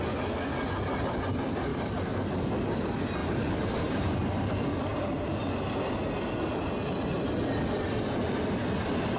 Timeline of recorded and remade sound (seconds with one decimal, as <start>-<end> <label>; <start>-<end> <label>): 0.0-1.7 recorded; 1.7-2.5 remade; 2.5-3.2 recorded; 3.2-4.5 remade; 4.5-9.2 recorded